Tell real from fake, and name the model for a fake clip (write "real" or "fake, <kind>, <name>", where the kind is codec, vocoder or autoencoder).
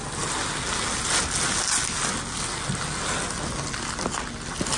real